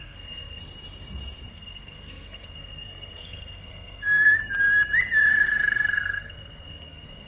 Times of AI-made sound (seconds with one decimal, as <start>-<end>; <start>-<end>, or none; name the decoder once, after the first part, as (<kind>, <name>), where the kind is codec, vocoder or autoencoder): 0.0-0.6 (codec, SNAC); 1.5-4.4; 5.3-7.3